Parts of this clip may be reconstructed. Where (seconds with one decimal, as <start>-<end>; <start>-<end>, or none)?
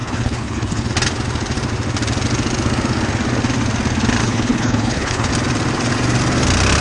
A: 0.0-0.9; 4.2-5.3